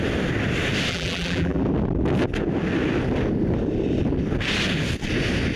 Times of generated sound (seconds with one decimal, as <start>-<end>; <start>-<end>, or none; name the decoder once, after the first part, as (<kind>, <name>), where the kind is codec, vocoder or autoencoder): 0.9-1.6 (vocoder, BigVGAN v2)